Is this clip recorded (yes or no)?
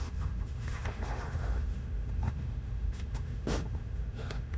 no